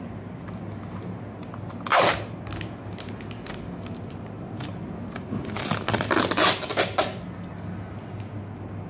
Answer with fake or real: real